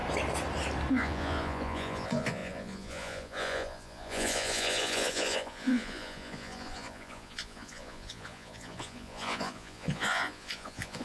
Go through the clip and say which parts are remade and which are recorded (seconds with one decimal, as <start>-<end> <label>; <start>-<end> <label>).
0.0-0.9 recorded; 0.9-11.0 remade